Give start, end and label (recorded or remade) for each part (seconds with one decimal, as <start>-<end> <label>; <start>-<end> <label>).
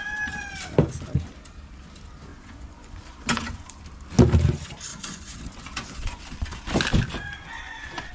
0.0-2.3 recorded; 2.3-3.8 remade; 3.8-4.9 recorded; 4.9-6.2 remade; 6.2-7.4 recorded; 7.4-8.1 remade